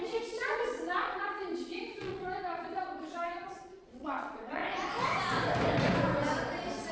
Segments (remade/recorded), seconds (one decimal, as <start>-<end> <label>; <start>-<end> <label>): 0.0-4.6 remade; 4.6-6.9 recorded